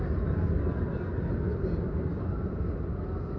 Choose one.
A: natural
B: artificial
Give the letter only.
A